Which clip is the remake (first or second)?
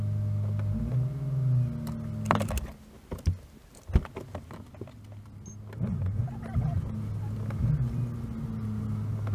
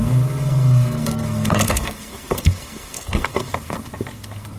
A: second